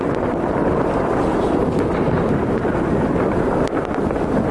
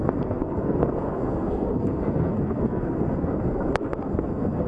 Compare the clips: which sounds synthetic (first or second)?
second